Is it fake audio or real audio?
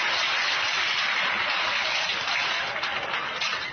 real